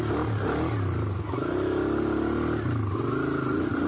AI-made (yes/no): no